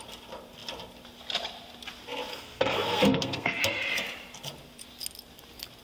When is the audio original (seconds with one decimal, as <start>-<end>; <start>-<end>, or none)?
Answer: 0.0-2.3; 3.6-5.8